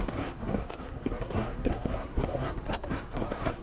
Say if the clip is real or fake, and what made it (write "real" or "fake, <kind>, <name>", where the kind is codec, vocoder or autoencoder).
fake, codec, SNAC